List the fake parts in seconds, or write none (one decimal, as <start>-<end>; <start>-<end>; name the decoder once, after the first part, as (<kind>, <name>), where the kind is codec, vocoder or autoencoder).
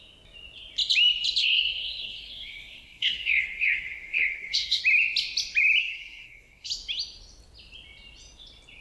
1.4-4.8 (codec, SNAC); 5.8-6.7